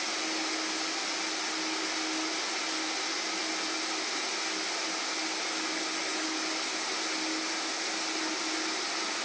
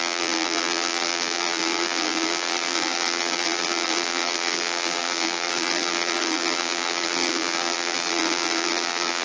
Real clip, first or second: first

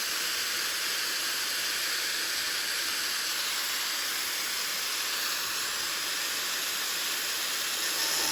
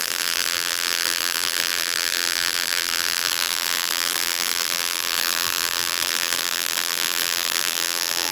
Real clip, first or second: first